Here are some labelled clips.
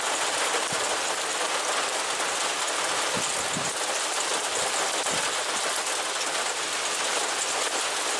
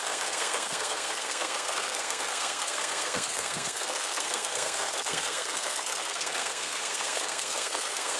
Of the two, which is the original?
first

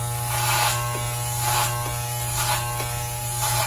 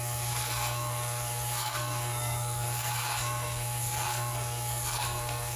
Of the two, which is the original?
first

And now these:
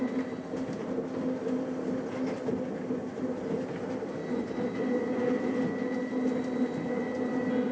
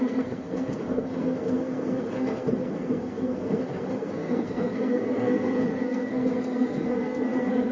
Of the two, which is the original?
first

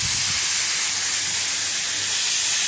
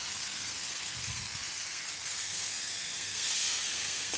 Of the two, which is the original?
first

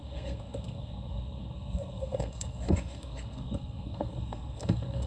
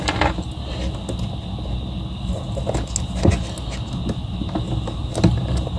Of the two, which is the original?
second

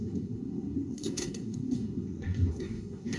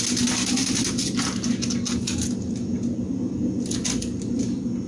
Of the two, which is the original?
second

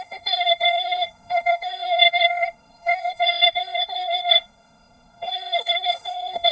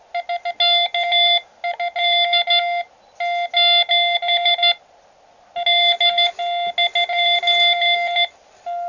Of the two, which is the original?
second